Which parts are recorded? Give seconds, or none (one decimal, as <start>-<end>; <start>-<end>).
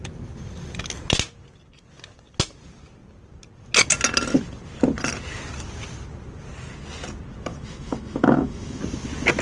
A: 0.0-7.5; 8.8-9.4